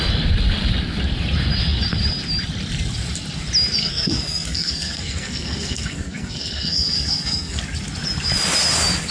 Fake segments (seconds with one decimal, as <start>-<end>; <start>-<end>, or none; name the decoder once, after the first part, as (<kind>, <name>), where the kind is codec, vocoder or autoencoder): 3.8-7.6 (codec, SNAC)